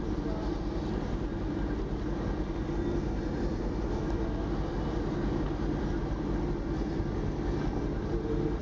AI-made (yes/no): no